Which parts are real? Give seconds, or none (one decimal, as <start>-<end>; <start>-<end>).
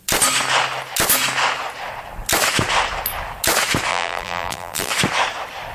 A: 0.0-3.9; 4.9-5.7